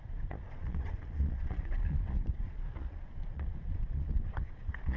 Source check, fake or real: fake